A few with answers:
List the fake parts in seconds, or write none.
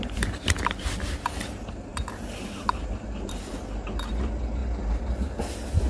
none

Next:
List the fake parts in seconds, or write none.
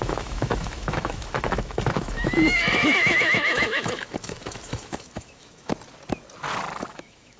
0.0-5.7 (autoencoder, DAC-VAE); 6.9-7.4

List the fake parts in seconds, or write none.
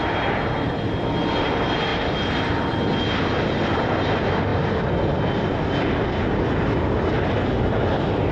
none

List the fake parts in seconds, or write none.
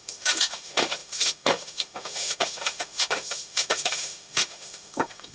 0.0-5.3 (autoencoder, DAC-VAE)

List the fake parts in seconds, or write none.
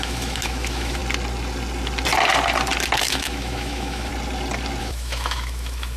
0.0-1.0 (autoencoder, DAC-VAE); 3.0-4.1; 4.8-6.0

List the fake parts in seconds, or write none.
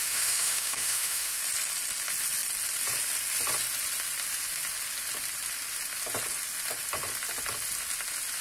0.0-1.4 (autoencoder, DAC-VAE)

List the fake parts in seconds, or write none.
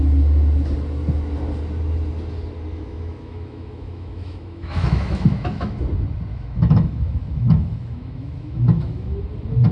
2.7-5.8 (autoencoder, DAC-VAE); 6.3-9.2